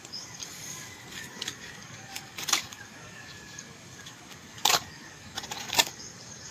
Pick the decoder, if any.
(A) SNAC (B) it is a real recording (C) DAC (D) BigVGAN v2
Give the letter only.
C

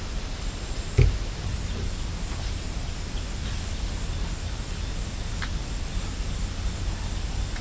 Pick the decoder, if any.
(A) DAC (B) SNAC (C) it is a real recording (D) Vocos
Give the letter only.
C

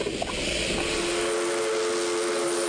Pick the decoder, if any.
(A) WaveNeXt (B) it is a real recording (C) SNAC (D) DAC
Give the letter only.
B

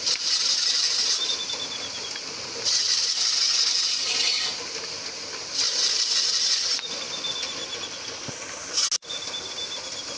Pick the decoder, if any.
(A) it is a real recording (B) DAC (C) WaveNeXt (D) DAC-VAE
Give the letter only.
A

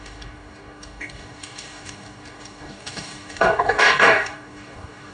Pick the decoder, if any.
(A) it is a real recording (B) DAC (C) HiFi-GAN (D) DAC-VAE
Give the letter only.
B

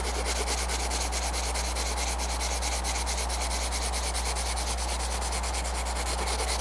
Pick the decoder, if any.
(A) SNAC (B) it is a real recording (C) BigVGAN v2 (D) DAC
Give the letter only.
B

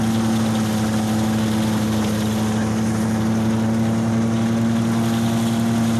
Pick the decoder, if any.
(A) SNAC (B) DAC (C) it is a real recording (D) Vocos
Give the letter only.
C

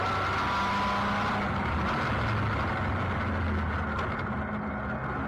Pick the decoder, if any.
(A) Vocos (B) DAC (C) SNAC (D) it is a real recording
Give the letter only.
D